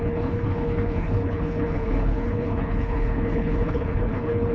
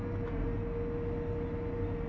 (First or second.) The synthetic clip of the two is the first